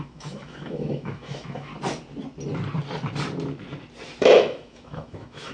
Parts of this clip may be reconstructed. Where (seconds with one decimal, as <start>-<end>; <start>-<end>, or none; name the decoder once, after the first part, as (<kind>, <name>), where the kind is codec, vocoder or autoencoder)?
0.0-1.7 (autoencoder, DAC-VAE); 4.2-5.5